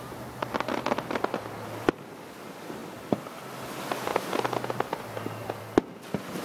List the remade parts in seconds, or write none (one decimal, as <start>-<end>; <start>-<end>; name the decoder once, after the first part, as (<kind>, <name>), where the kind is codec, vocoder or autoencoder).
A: none